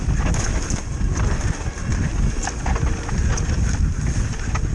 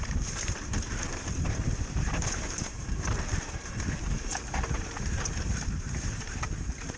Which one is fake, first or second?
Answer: second